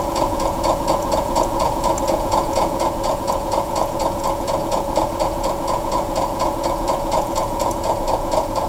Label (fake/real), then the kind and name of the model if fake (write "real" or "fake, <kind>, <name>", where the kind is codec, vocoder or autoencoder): fake, vocoder, Vocos